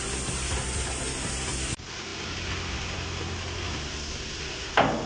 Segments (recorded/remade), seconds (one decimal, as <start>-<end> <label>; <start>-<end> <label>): 0.0-5.1 recorded